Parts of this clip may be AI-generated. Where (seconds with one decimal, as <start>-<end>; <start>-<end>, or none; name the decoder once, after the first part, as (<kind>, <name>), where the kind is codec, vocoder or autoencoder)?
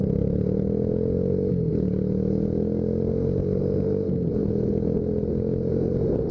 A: none